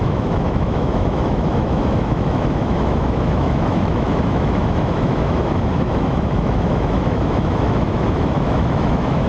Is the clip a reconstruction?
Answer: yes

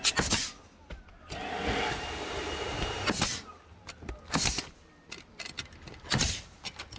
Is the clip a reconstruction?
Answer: no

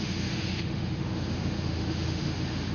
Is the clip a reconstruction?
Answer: yes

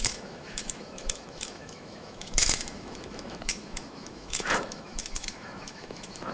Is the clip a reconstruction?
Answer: yes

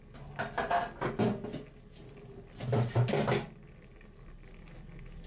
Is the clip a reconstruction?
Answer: no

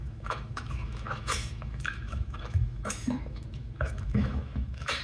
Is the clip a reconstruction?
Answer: yes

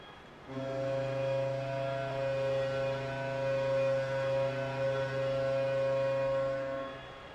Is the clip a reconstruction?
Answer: no